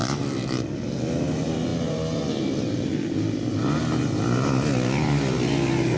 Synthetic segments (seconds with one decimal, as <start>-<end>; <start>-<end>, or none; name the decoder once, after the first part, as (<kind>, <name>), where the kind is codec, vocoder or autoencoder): 0.0-0.5 (vocoder, BigVGAN v2)